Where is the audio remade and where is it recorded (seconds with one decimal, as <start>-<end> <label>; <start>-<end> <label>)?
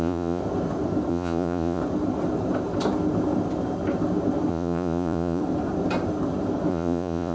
0.0-0.4 remade; 0.4-1.1 recorded; 1.1-1.8 remade; 1.8-4.5 recorded; 4.5-5.4 remade; 5.4-6.7 recorded; 6.7-7.3 remade